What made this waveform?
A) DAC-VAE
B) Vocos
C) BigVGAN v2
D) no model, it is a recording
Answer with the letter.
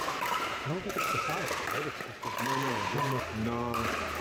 C